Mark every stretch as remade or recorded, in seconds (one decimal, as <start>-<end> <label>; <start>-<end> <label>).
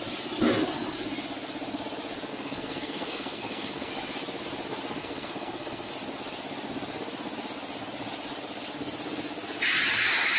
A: 0.0-2.3 recorded; 2.3-3.9 remade; 3.9-5.0 recorded; 5.0-5.9 remade; 5.9-10.4 recorded